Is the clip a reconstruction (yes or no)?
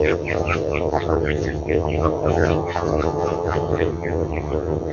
yes